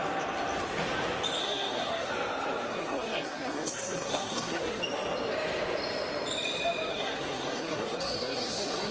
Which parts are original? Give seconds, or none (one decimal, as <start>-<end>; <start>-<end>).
0.0-1.4; 2.1-2.7; 4.8-6.9